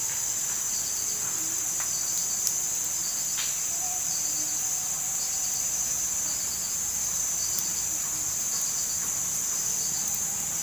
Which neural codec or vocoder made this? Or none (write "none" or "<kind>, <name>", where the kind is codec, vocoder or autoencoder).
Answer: none